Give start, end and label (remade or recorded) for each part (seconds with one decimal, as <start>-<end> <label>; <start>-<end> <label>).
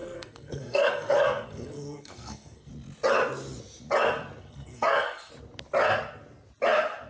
0.0-2.7 remade; 2.7-4.4 recorded; 4.4-5.3 remade; 5.3-7.1 recorded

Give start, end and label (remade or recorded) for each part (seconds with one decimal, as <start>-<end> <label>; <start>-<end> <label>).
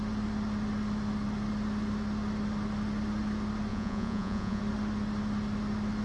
0.0-3.7 recorded; 3.7-4.6 remade; 4.6-6.0 recorded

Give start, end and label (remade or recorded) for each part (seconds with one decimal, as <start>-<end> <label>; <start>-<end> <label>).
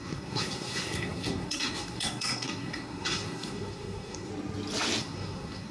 0.0-4.3 remade; 4.3-5.0 recorded; 5.0-5.7 remade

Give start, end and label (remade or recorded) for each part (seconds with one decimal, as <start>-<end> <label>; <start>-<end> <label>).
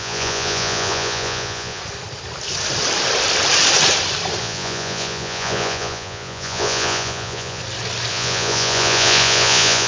0.0-1.8 remade; 1.8-4.4 recorded; 4.4-7.6 remade; 7.6-8.1 recorded; 8.1-9.9 remade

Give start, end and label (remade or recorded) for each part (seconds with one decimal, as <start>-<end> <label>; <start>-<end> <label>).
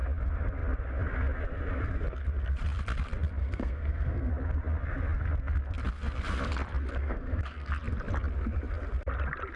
0.0-3.4 recorded; 3.4-4.3 remade; 4.3-7.0 recorded; 7.0-7.7 remade; 7.7-9.6 recorded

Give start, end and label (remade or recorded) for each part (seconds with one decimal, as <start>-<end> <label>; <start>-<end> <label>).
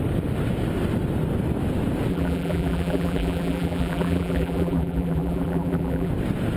0.0-2.1 recorded; 2.1-6.1 remade; 6.1-6.6 recorded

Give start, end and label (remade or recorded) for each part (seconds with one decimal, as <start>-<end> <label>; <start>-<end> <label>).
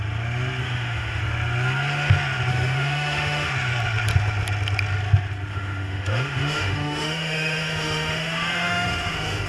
0.0-0.6 recorded; 0.6-1.2 remade; 1.2-2.5 recorded; 2.5-3.5 remade; 3.5-5.5 recorded; 5.5-9.5 remade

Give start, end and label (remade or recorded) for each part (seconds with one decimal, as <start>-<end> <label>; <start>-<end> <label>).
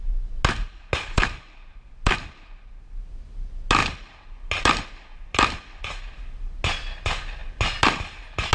0.0-8.5 recorded